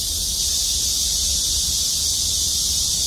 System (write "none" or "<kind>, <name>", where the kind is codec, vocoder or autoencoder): none